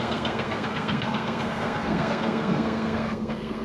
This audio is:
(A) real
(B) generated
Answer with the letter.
B